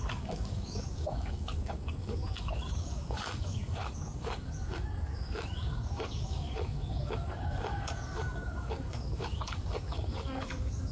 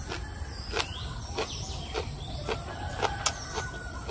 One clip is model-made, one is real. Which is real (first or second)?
second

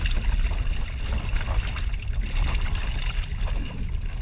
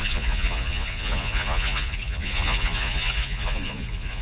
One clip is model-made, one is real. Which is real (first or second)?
first